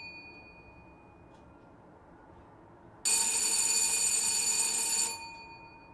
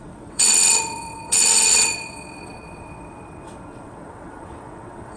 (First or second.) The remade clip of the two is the second